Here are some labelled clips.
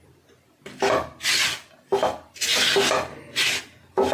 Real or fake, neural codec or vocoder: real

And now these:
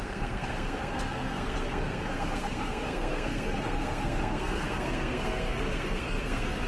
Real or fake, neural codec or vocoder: fake, codec, SNAC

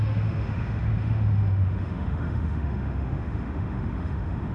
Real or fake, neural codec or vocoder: fake, autoencoder, DAC-VAE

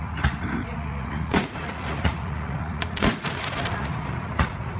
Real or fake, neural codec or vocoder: fake, vocoder, Vocos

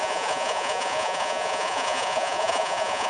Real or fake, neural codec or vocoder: fake, vocoder, Vocos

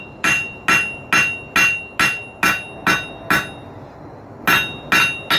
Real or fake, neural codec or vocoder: real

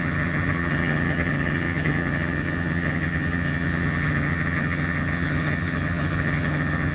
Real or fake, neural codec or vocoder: fake, vocoder, HiFi-GAN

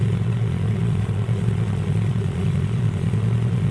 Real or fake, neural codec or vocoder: fake, vocoder, Vocos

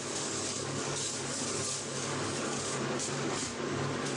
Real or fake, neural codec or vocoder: fake, codec, DAC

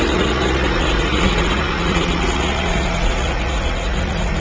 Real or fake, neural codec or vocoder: fake, vocoder, Vocos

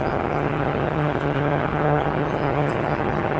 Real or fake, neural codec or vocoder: fake, vocoder, HiFi-GAN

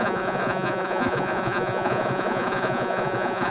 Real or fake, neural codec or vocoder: fake, vocoder, Vocos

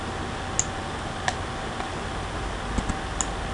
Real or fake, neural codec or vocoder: real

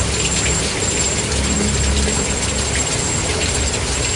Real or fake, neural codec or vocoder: real